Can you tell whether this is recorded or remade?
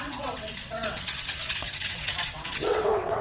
remade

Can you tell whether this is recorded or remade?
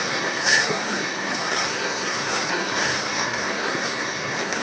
remade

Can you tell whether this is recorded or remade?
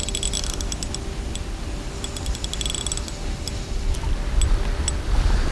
recorded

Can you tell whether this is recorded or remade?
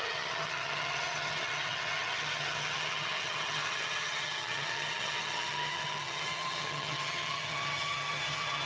remade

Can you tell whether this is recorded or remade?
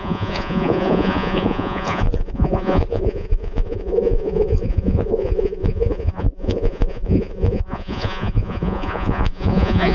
remade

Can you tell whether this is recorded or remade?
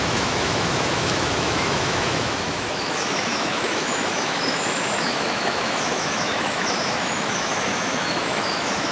remade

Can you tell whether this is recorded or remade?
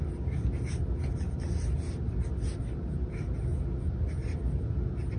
recorded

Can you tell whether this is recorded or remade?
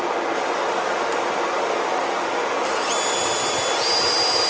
recorded